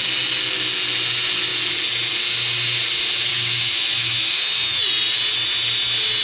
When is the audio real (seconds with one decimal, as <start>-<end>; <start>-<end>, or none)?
0.0-3.3; 4.9-6.2